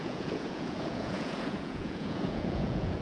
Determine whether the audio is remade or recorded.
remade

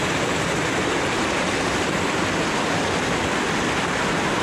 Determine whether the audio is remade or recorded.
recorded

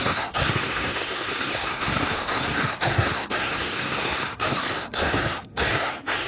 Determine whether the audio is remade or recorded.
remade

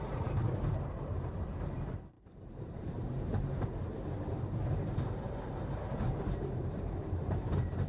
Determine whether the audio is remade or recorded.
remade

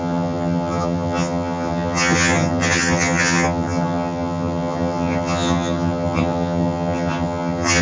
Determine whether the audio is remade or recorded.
remade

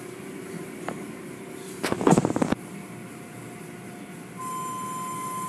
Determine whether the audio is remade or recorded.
recorded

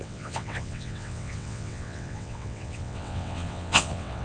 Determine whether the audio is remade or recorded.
remade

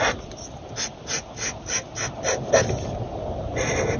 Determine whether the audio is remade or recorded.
recorded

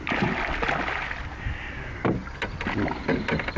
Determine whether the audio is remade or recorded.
recorded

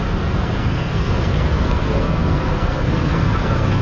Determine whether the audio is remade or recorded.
remade